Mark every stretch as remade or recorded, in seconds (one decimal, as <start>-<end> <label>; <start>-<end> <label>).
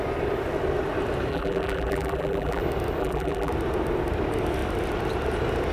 0.0-1.3 recorded; 1.3-2.6 remade; 2.6-3.0 recorded; 3.0-3.5 remade; 3.5-5.7 recorded